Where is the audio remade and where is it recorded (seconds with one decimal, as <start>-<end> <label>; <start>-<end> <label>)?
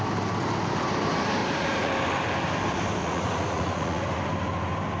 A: 0.0-1.4 recorded; 1.4-1.9 remade; 1.9-3.0 recorded; 3.0-4.0 remade; 4.0-5.0 recorded